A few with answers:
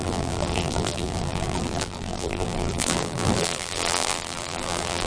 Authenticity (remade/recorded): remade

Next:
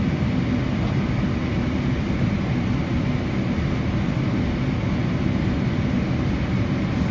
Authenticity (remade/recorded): recorded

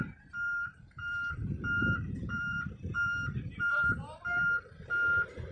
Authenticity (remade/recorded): remade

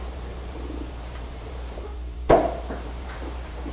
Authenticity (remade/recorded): remade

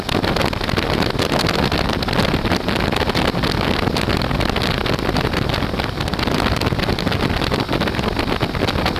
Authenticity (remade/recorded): recorded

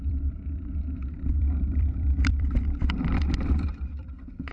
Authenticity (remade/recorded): remade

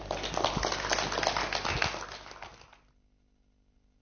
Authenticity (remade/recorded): recorded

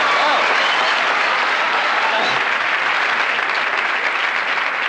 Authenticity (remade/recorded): recorded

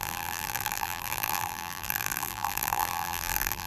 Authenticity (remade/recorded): remade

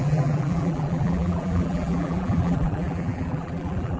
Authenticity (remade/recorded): remade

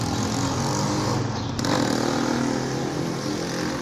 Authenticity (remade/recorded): recorded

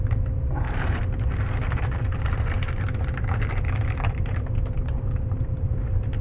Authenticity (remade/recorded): remade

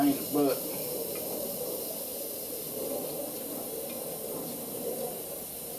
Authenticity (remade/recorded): recorded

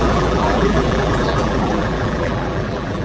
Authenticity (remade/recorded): remade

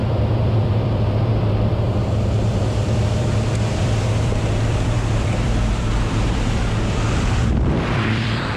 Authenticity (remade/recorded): remade